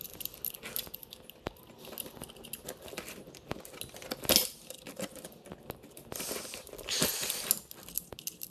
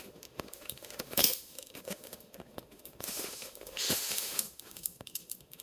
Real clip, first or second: first